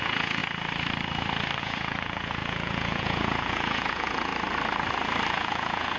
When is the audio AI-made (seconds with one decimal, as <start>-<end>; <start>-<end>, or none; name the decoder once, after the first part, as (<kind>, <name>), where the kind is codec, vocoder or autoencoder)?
0.0-0.4 (vocoder, Vocos); 1.6-4.3; 5.3-6.0